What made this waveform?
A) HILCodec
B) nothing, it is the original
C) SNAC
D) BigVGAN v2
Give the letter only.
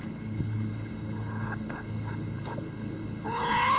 A